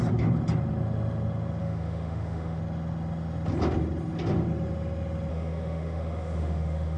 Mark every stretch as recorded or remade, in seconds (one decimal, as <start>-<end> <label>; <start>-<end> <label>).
0.0-1.6 recorded; 1.6-2.6 remade; 2.6-5.3 recorded; 5.3-7.0 remade